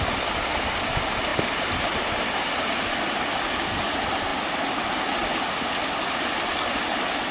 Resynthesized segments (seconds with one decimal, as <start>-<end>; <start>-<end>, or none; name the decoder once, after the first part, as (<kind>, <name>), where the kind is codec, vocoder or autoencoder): none